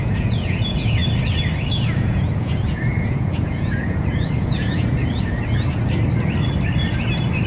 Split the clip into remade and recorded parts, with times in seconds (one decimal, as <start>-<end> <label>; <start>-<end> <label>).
0.0-1.0 remade; 1.0-1.6 recorded; 1.6-5.0 remade; 5.0-7.5 recorded